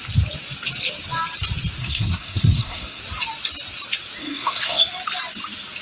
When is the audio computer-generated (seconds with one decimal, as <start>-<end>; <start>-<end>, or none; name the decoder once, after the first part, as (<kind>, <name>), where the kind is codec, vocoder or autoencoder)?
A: 1.8-3.0 (codec, SNAC); 4.2-4.8

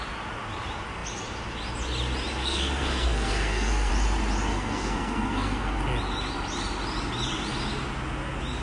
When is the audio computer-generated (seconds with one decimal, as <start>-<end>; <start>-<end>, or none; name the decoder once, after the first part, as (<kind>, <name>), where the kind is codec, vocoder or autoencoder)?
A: 2.4-3.9 (codec, SNAC); 4.5-5.8

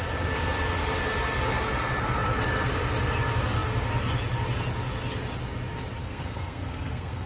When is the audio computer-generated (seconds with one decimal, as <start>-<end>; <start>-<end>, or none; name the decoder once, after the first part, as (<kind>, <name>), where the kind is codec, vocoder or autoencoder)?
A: 6.0-7.3 (codec, SNAC)

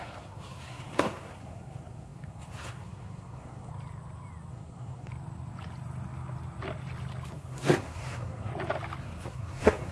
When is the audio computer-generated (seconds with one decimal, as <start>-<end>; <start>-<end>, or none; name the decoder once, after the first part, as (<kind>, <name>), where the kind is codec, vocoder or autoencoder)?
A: 0.0-3.7 (codec, SNAC); 4.5-5.1; 7.3-8.5; 9.0-9.9

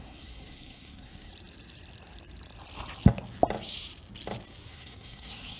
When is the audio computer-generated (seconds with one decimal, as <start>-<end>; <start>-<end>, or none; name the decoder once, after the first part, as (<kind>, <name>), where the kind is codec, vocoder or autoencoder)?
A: 0.0-1.3 (codec, SNAC); 4.7-5.6

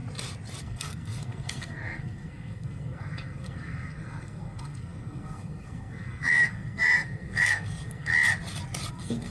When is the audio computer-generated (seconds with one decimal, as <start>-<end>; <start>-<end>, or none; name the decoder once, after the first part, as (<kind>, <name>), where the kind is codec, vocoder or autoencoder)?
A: 0.6-8.1 (codec, SNAC); 8.9-9.3

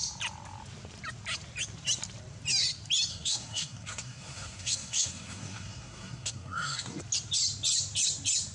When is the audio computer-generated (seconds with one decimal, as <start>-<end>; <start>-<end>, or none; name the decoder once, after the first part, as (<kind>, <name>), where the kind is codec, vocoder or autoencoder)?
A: 3.1-7.0 (codec, SNAC)